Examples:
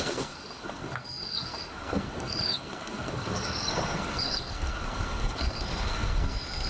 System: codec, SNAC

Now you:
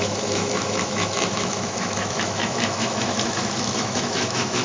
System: autoencoder, DAC-VAE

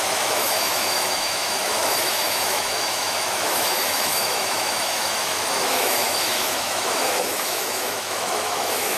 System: autoencoder, DAC-VAE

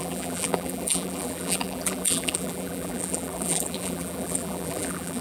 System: vocoder, BigVGAN v2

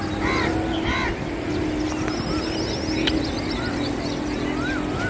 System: none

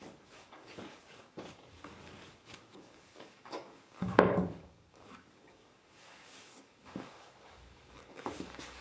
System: codec, DAC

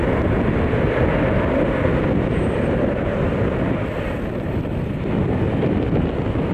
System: none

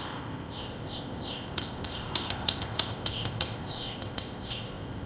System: codec, ZipCodec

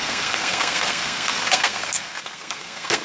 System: codec, SNAC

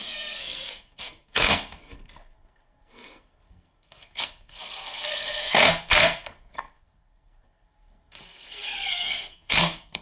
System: codec, SNAC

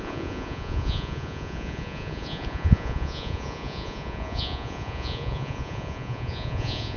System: vocoder, Vocos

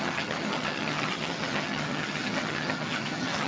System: vocoder, HiFi-GAN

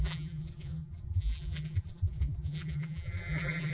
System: vocoder, BigVGAN v2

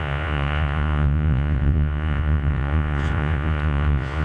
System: vocoder, Vocos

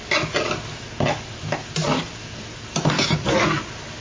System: none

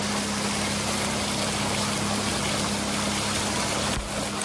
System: none